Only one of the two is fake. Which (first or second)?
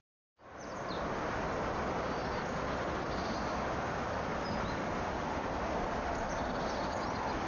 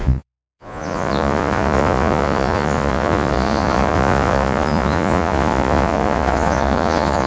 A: second